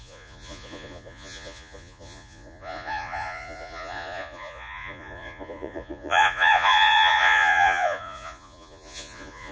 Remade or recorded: remade